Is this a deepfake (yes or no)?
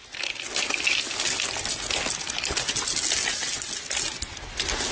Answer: no